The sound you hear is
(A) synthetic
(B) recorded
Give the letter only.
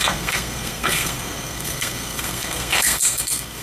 A